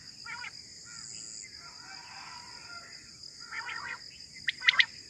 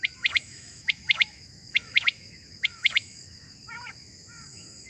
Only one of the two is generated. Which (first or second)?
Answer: second